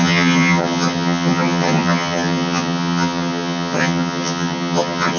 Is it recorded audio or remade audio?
remade